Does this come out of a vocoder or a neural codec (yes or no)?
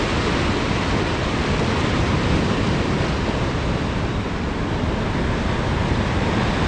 no